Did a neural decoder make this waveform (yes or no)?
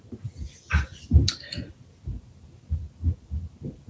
no